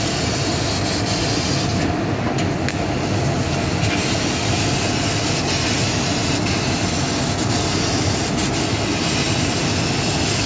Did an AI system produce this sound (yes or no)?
no